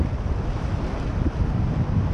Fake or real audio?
real